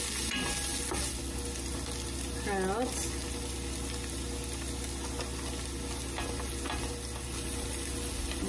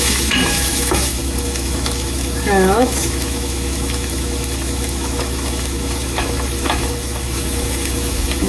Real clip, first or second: first